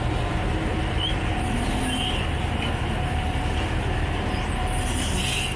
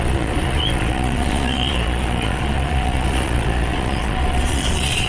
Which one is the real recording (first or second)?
first